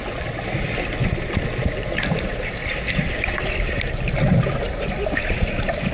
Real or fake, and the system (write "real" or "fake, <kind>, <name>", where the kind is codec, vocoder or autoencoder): real